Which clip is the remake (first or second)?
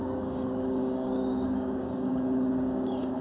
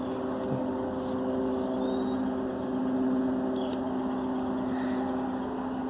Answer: first